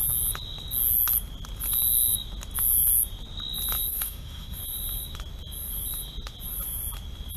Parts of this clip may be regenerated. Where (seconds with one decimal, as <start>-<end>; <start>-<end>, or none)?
3.9-4.6

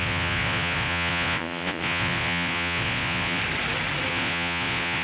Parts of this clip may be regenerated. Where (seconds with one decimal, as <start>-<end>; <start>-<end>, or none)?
0.0-3.4; 4.1-5.0

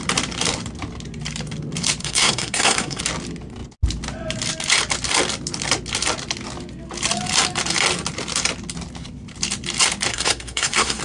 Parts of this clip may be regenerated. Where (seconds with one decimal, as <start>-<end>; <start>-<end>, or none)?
2.0-3.0; 10.1-11.0

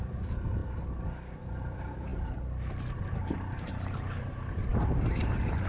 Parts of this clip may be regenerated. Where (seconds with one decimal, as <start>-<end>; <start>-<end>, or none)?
none

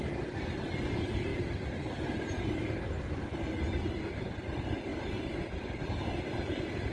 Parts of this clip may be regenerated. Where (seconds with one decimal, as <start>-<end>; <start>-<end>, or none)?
4.9-5.8